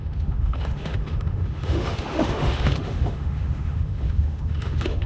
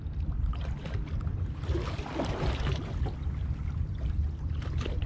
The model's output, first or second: first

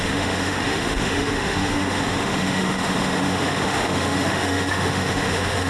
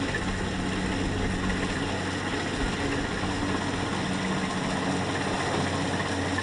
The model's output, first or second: first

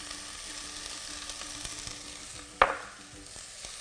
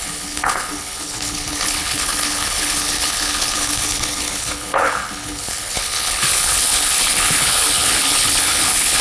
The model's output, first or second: second